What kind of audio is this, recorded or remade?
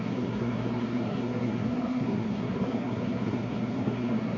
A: remade